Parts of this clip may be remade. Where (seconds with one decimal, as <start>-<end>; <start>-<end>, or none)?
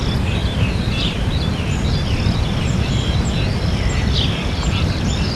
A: 0.4-2.9